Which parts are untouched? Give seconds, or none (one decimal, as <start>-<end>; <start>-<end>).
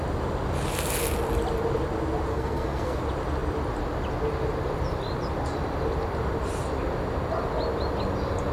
0.0-2.3; 3.0-8.5